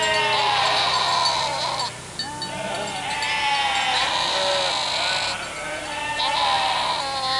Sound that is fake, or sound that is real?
real